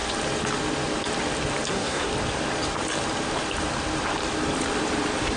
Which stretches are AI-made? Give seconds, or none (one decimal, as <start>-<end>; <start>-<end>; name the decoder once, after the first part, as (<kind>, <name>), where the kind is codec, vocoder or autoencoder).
1.7-2.1 (codec, SNAC)